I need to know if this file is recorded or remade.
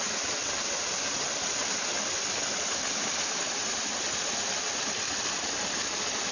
recorded